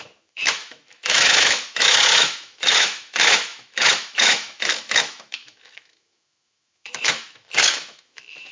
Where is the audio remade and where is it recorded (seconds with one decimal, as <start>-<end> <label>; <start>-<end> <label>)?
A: 0.0-8.5 remade